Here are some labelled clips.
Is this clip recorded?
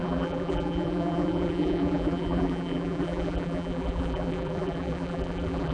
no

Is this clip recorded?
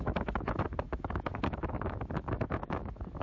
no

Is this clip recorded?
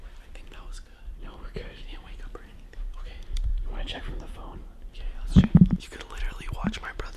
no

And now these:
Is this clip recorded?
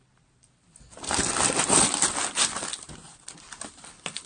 no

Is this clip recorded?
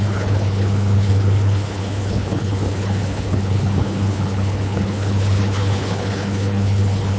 no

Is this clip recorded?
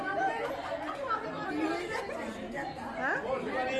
yes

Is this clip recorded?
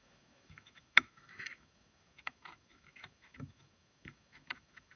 no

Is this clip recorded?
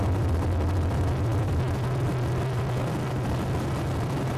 yes